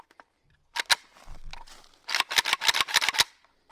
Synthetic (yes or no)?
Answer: no